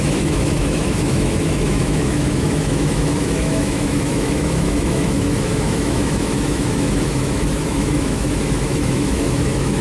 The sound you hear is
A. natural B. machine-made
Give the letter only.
B